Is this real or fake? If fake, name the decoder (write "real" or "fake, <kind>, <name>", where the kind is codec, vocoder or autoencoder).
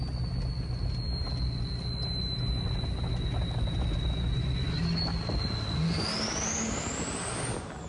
real